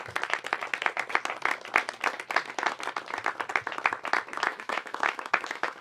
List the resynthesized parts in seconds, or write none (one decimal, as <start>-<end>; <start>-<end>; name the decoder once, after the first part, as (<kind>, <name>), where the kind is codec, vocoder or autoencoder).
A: 4.5-5.8 (autoencoder, DAC-VAE)